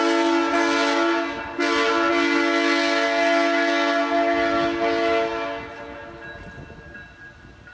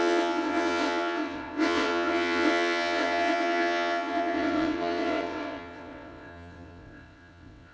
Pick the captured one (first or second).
first